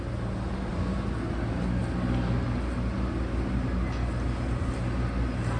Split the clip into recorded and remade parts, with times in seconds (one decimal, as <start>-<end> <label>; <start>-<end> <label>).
0.0-5.6 recorded